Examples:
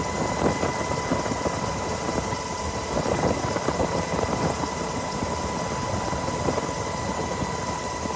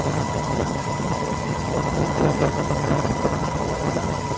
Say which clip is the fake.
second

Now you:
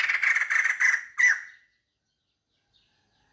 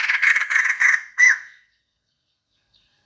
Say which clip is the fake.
second